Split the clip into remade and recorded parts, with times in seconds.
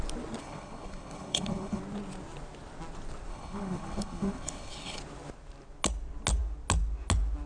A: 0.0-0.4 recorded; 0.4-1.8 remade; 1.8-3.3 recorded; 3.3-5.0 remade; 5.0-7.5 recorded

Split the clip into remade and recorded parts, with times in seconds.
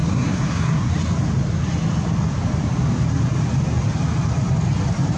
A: 0.0-0.9 remade; 0.9-5.2 recorded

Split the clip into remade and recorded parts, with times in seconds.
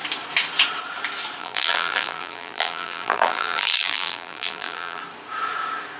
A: 0.0-1.4 recorded; 1.4-5.0 remade; 5.0-6.0 recorded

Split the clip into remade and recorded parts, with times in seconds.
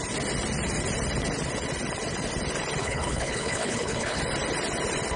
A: 0.0-2.8 recorded; 2.8-4.2 remade; 4.2-5.2 recorded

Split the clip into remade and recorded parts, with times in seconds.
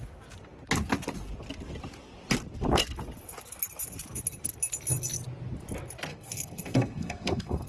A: 0.0-6.1 recorded; 6.1-7.7 remade